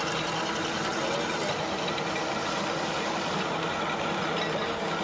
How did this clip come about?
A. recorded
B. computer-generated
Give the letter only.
A